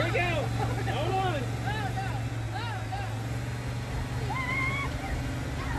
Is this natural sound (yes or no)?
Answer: yes